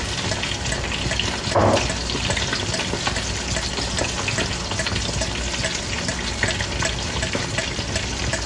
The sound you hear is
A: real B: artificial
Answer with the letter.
A